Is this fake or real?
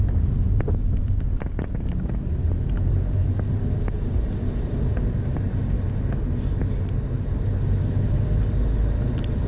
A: real